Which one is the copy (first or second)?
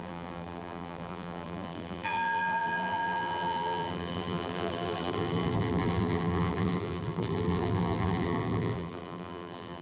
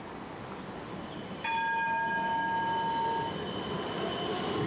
first